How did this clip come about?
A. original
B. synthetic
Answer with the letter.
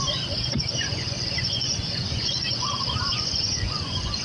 B